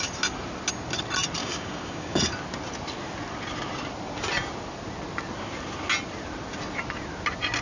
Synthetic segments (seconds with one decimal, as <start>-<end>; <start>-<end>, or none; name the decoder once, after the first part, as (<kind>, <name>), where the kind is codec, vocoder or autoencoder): 1.4-2.2 (codec, DAC)

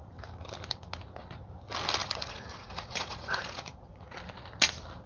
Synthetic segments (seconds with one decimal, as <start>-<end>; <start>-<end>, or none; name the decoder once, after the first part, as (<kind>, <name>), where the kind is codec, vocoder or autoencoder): 2.0-4.2 (vocoder, Vocos)

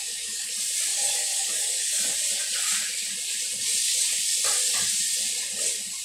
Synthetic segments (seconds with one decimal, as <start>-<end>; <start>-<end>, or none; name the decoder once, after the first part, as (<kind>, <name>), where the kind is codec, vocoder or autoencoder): 0.0-0.5 (codec, DAC); 0.9-2.0

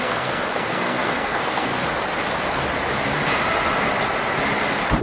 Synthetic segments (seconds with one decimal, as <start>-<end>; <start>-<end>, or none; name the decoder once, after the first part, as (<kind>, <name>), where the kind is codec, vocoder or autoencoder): 0.0-1.7 (codec, SNAC)

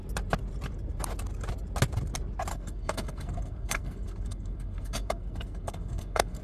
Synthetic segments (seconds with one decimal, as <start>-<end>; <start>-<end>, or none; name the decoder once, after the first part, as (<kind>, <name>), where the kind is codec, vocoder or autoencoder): 2.5-6.4 (codec, SNAC)

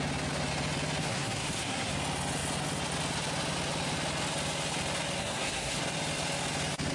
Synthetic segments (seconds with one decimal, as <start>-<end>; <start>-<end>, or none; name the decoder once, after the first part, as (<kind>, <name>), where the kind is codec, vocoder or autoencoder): 1.0-1.9 (codec, SNAC); 5.2-5.8

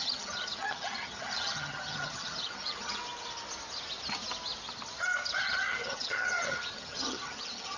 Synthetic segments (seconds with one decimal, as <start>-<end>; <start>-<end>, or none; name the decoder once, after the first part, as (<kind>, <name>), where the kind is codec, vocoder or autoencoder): 0.0-3.0 (vocoder, HiFi-GAN); 5.4-7.8

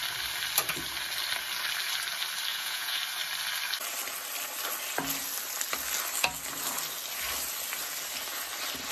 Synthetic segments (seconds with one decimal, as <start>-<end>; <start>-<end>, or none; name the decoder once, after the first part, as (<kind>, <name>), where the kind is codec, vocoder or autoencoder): 2.5-3.0 (vocoder, Vocos)